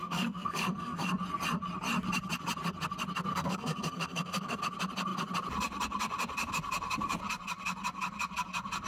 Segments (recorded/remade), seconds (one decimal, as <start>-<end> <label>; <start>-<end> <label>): 0.0-1.1 remade; 1.1-3.3 recorded; 3.3-4.6 remade; 4.6-8.9 recorded

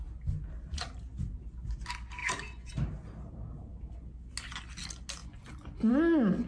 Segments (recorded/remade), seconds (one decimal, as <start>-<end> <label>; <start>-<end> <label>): 0.0-2.2 recorded; 2.2-2.7 remade; 2.7-5.2 recorded; 5.2-5.9 remade; 5.9-6.5 recorded

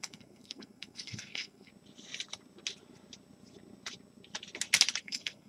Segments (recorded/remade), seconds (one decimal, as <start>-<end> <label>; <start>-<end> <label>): 0.0-1.7 remade; 1.7-5.0 recorded; 5.0-5.5 remade

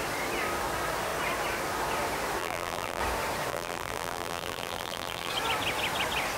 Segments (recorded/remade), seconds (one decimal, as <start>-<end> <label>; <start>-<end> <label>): 0.0-2.4 recorded; 2.4-3.0 remade; 3.0-3.5 recorded; 3.5-5.3 remade; 5.3-6.4 recorded

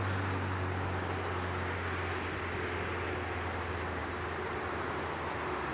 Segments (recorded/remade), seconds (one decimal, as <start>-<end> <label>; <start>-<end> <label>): 0.0-5.7 recorded